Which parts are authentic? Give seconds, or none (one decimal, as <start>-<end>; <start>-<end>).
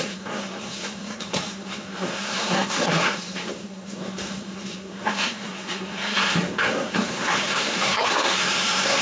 none